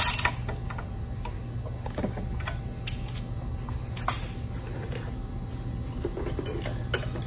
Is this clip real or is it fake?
real